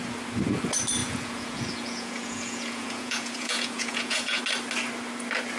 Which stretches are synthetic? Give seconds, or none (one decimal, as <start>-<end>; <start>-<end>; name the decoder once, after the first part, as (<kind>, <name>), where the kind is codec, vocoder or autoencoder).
1.0-4.4 (vocoder, Vocos)